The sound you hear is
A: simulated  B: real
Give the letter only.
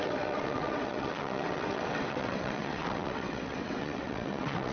A